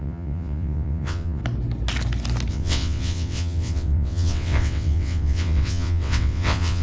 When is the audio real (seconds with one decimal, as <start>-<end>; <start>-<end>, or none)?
1.4-2.5